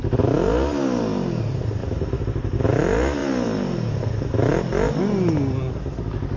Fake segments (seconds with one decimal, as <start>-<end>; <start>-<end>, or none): none